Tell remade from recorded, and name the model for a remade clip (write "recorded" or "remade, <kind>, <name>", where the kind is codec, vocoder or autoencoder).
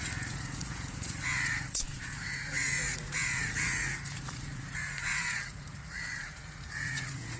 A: remade, vocoder, Vocos